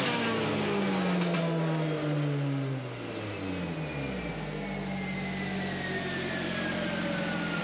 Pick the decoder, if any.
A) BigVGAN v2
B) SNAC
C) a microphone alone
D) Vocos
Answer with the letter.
C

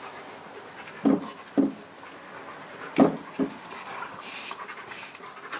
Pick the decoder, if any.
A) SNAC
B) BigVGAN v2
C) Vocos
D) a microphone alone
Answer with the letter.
D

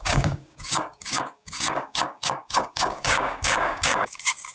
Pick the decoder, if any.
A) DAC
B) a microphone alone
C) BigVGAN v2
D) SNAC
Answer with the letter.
A